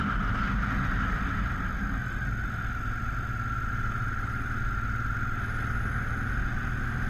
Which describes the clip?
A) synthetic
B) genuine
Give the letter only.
B